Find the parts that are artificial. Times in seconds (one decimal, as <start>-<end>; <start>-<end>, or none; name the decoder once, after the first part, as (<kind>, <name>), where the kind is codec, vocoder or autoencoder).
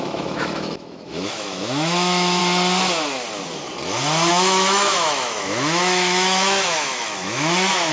0.0-2.4 (autoencoder, DAC-VAE); 4.3-7.9